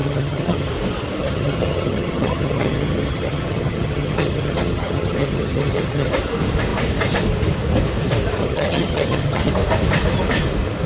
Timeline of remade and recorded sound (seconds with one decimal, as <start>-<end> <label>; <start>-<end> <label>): 0.0-0.7 remade; 0.7-1.2 recorded; 1.2-6.1 remade; 6.1-8.4 recorded; 8.4-9.5 remade; 9.5-10.9 recorded